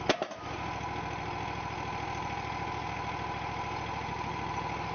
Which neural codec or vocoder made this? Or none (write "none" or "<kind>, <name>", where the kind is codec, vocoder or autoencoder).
none